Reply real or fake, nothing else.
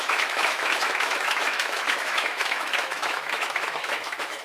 fake